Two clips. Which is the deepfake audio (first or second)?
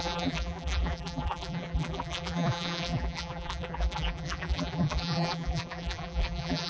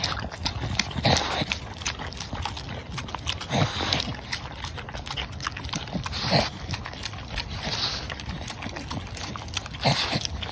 first